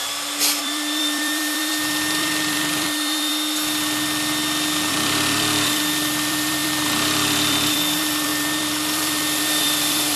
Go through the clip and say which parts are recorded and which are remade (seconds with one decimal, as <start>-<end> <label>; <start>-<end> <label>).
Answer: 0.0-0.6 recorded; 0.6-3.3 remade; 3.3-4.9 recorded; 4.9-10.2 remade